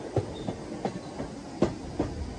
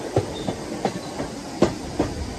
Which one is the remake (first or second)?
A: second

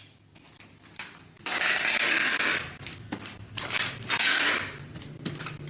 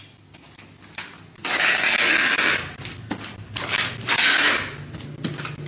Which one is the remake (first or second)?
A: first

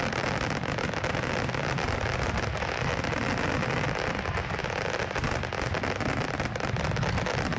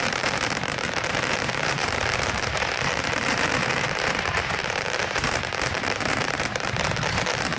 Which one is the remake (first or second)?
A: second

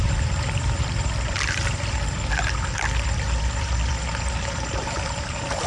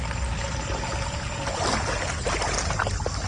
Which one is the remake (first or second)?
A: first